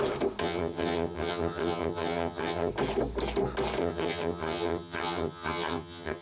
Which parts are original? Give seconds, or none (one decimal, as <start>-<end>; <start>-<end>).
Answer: 0.0-0.4; 2.7-3.8